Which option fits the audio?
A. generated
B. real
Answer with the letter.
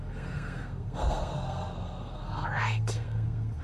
A